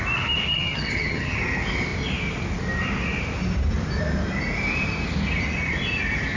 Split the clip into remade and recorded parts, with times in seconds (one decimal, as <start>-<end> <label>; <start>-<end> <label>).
0.0-0.5 recorded; 0.5-1.4 remade; 1.4-6.4 recorded